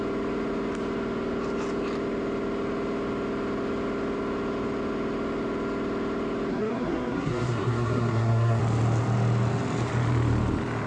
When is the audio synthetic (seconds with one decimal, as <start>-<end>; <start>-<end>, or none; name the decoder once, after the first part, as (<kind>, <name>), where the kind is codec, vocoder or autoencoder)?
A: 6.5-8.6 (codec, SNAC)